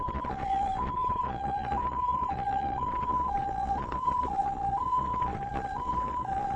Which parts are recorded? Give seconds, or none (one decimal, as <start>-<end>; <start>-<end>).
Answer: none